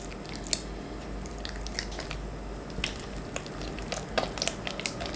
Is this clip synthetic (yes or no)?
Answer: no